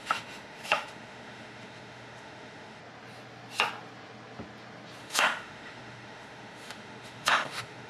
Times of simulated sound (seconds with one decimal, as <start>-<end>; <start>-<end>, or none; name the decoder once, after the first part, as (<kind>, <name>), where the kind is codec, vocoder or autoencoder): 0.0-2.8 (autoencoder, DAC-VAE); 5.0-7.9